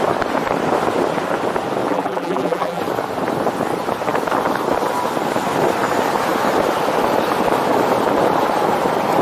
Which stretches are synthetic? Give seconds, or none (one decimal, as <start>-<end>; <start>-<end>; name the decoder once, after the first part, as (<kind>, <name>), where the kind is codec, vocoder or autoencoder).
1.9-2.8 (vocoder, BigVGAN v2)